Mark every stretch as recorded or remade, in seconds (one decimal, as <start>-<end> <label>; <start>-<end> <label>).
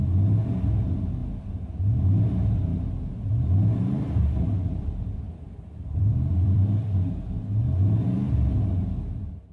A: 0.0-2.7 recorded; 2.7-7.4 remade; 7.4-9.5 recorded